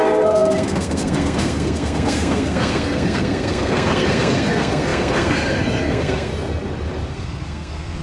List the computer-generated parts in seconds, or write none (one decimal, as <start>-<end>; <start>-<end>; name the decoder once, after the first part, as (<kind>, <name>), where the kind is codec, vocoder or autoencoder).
0.0-6.3 (codec, SNAC); 7.1-8.0